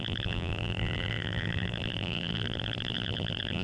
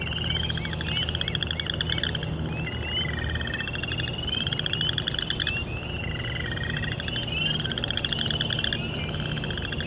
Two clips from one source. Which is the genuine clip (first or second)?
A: second